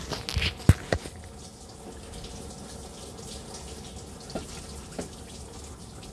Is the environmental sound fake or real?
real